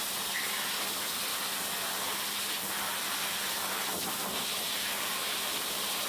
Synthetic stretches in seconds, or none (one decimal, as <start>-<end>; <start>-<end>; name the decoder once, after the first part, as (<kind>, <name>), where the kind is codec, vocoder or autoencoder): 0.0-1.3 (vocoder, BigVGAN v2); 3.7-6.1